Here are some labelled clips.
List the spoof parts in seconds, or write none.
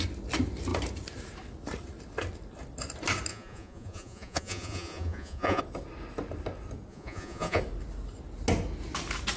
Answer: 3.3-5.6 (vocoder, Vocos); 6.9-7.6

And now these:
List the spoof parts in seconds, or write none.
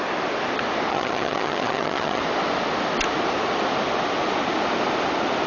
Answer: 0.9-2.2 (vocoder, HiFi-GAN)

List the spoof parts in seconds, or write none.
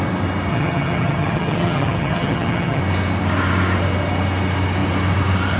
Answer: 0.5-2.8 (vocoder, HiFi-GAN)